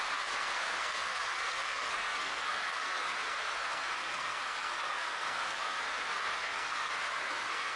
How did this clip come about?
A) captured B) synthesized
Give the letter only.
B